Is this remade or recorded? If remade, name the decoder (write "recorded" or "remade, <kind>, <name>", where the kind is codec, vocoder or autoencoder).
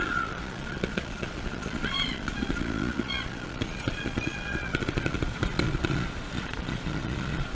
remade, vocoder, Vocos